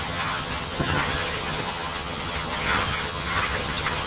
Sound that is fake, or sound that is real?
fake